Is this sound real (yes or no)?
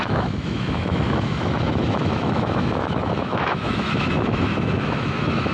no